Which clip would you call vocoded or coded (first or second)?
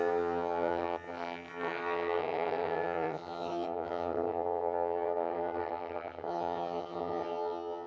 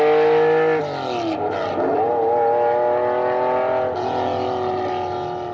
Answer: first